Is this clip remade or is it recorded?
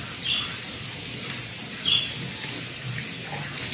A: recorded